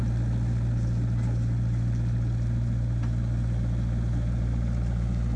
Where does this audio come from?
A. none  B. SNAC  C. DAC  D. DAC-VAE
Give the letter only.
A